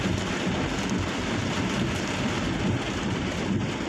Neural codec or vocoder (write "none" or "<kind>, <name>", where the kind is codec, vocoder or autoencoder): none